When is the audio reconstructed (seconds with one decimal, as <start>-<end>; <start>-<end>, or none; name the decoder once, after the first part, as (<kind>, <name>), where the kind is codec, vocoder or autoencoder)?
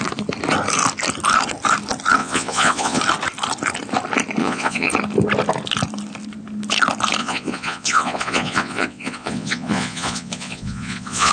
2.2-3.0 (vocoder, Vocos); 4.4-4.9; 7.2-11.3